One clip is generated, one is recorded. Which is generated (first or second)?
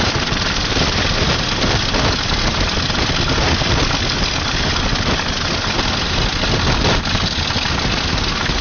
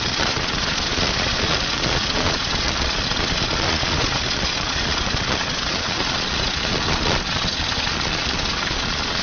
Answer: second